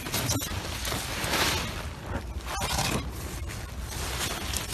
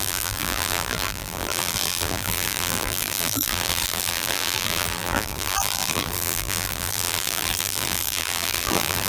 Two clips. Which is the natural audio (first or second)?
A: first